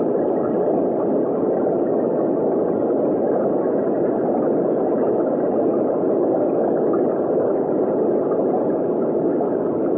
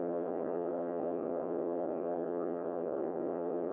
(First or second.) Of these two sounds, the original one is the first